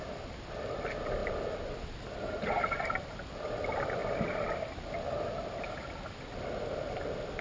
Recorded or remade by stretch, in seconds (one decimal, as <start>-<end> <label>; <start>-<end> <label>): 0.0-7.4 recorded